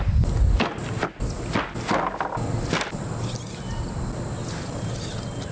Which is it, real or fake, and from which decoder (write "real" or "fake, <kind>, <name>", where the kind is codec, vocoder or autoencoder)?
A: real